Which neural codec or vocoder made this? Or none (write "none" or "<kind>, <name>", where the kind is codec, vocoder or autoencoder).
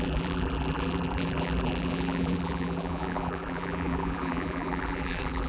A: vocoder, BigVGAN v2